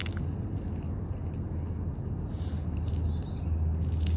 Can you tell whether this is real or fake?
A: real